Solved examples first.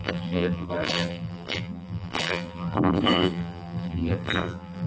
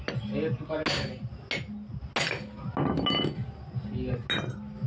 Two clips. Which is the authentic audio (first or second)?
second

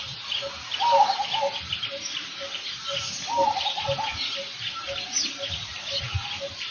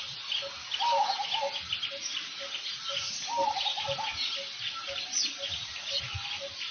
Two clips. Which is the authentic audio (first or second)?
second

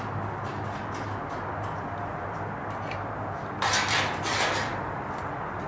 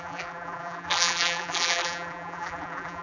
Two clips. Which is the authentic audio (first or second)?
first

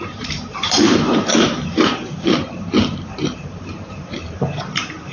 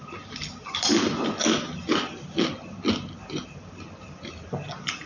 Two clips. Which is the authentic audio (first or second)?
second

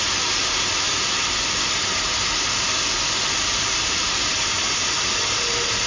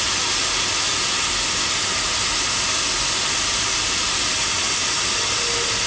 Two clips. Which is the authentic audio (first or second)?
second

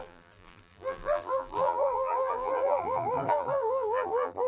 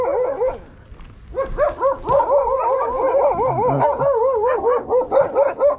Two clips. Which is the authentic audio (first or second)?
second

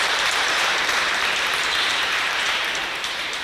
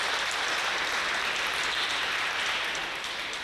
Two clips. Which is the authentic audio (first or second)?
second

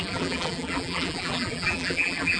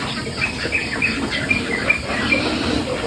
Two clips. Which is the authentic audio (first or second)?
second